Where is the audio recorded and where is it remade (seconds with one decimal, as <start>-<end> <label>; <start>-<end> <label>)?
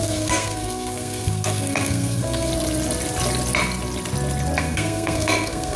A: 0.0-2.5 remade; 2.5-4.6 recorded; 4.6-5.8 remade